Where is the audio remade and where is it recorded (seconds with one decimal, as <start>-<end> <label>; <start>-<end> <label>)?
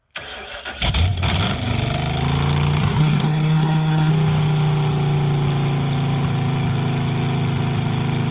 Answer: 0.0-2.8 recorded; 2.8-4.1 remade; 4.1-8.3 recorded